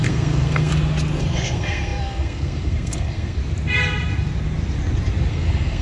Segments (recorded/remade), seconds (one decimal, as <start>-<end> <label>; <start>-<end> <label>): 0.0-0.7 remade; 0.7-1.2 recorded; 1.2-3.4 remade; 3.4-5.3 recorded; 5.3-5.8 remade